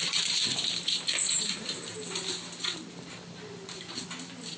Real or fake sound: real